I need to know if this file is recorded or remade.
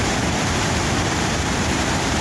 remade